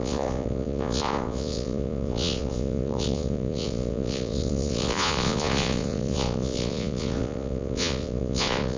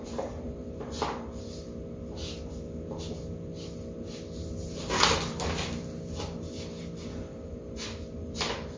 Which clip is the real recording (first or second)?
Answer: second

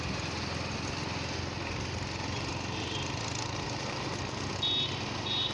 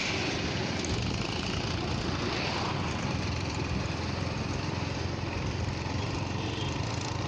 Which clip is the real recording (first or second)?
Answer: first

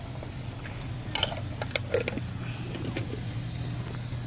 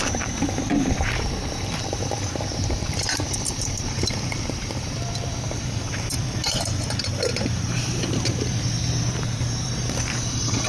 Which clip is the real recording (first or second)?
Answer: first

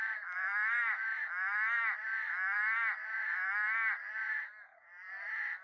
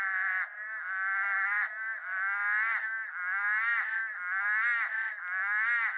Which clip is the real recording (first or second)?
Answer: second